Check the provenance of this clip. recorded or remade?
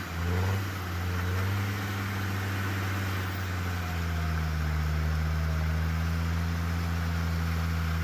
recorded